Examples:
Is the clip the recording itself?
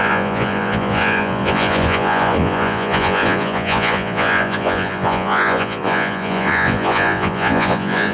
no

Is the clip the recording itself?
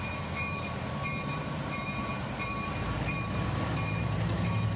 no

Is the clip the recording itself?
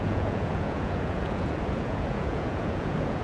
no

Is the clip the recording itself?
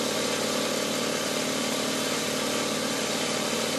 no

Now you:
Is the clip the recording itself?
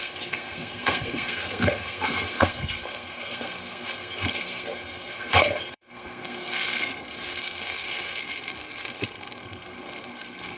no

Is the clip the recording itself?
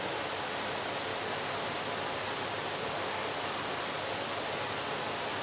yes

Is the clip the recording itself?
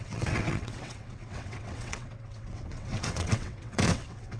no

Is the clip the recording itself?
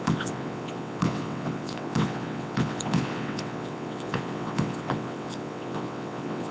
no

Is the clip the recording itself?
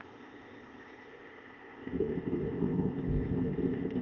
no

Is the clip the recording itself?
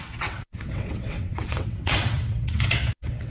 no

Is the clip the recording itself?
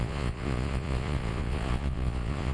no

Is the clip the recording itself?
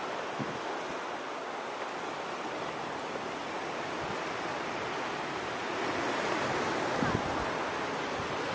yes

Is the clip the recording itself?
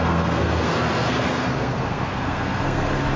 no